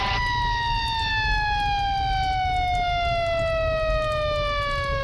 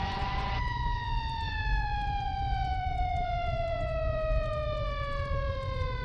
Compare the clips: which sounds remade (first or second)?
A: second